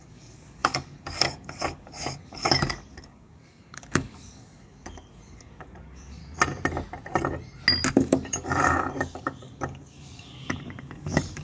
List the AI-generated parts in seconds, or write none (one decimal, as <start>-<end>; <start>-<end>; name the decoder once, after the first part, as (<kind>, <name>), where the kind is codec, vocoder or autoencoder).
0.0-6.2 (codec, DAC); 7.9-11.4